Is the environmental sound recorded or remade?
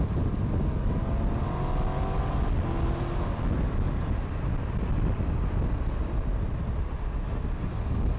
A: recorded